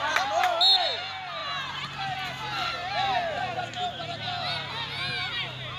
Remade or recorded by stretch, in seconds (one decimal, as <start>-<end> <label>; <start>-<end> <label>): 0.0-5.8 recorded

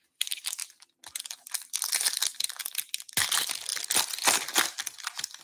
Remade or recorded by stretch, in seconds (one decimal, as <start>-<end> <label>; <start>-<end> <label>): 0.0-0.6 remade; 0.6-2.2 recorded; 2.2-2.6 remade; 2.6-3.3 recorded; 3.3-3.7 remade; 3.7-5.4 recorded

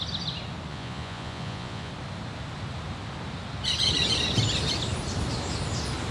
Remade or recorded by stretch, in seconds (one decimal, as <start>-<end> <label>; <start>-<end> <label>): 0.0-0.7 recorded; 0.7-1.9 remade; 1.9-6.1 recorded

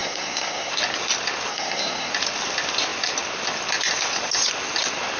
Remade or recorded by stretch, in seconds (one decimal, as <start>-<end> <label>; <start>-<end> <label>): 0.0-0.7 remade; 0.7-1.5 recorded; 1.5-2.1 remade; 2.1-5.2 recorded